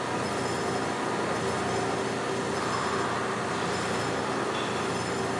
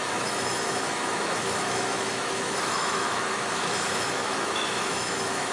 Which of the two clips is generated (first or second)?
second